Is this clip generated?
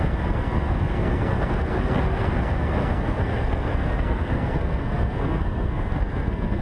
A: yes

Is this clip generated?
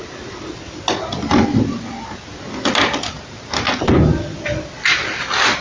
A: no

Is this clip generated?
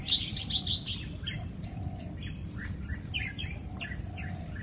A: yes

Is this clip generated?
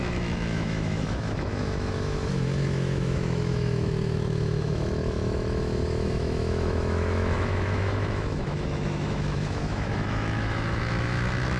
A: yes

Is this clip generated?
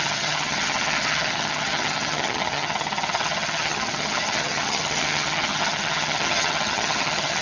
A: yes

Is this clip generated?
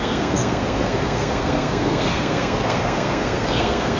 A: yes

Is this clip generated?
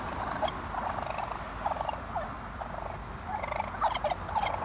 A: no